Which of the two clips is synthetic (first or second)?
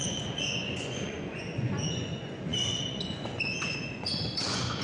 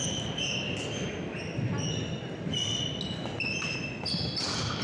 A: first